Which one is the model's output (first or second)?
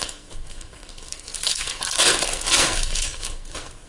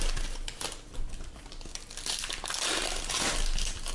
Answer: first